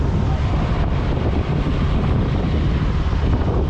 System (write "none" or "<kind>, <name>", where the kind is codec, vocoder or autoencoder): none